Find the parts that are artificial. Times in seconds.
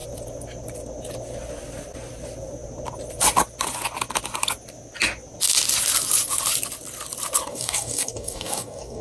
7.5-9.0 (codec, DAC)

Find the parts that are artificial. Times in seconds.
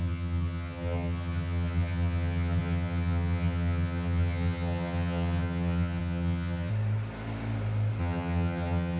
0.0-6.7 (vocoder, HiFi-GAN); 8.0-9.0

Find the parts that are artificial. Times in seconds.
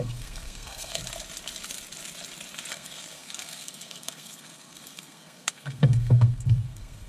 0.0-1.0 (codec, SNAC); 2.7-7.1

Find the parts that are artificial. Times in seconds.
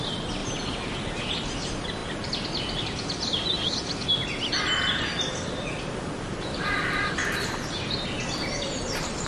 0.4-1.3 (vocoder, BigVGAN v2); 7.2-8.1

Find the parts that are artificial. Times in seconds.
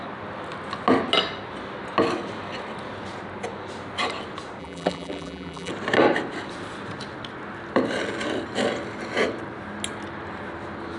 4.6-5.7 (vocoder, BigVGAN v2)